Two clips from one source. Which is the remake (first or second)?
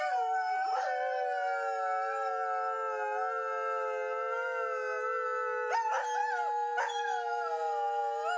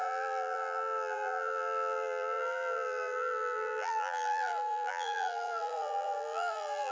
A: second